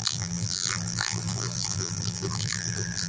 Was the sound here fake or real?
fake